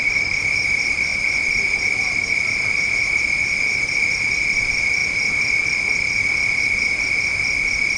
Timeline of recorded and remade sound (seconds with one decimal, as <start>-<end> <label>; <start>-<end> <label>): 0.0-1.1 remade; 1.1-4.6 recorded; 4.6-5.0 remade; 5.0-8.0 recorded